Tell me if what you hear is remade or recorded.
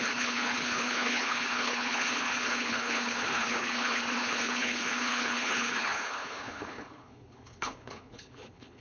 remade